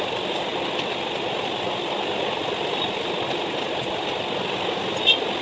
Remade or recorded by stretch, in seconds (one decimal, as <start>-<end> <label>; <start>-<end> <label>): 0.0-5.4 recorded